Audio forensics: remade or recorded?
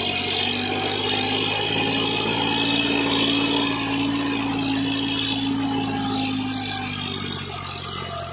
recorded